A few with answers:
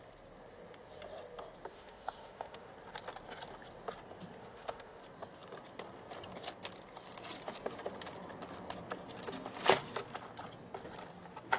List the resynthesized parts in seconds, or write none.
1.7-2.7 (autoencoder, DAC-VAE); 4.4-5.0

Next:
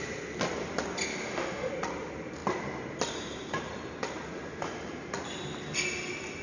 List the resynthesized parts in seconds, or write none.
1.1-1.7 (autoencoder, DAC-VAE)

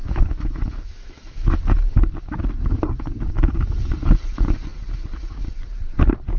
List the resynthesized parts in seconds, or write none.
0.0-1.5 (autoencoder, DAC-VAE)

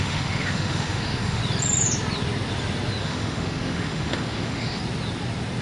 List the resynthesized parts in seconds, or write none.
0.0-1.4 (autoencoder, DAC-VAE); 3.0-4.8